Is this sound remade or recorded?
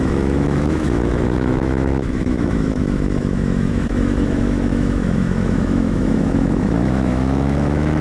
remade